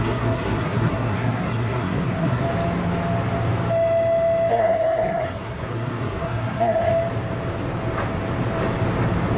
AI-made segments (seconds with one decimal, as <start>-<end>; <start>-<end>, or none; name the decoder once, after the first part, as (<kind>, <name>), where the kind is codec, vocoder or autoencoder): 0.0-2.4 (codec, SNAC); 4.5-6.9